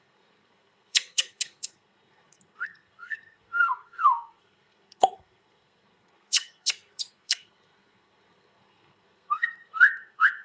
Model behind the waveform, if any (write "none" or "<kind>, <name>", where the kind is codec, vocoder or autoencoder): codec, SNAC